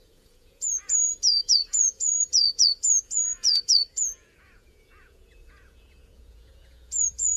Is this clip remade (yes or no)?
yes